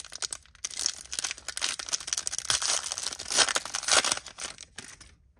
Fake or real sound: real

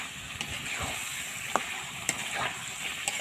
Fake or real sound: real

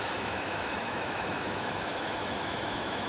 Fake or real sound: fake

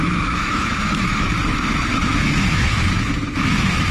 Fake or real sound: fake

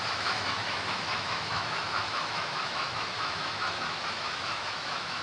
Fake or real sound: fake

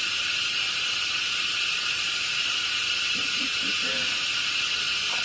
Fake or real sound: real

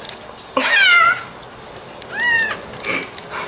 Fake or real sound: real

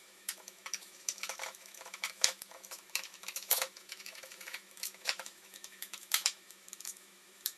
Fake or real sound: fake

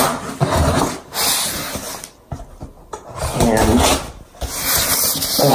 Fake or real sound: real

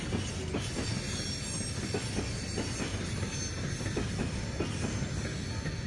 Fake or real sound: real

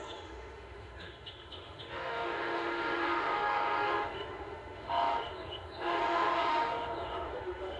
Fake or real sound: fake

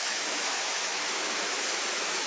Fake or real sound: fake